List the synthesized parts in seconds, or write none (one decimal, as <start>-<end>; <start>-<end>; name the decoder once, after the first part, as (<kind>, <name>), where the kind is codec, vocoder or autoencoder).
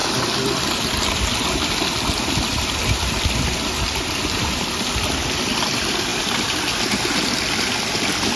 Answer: none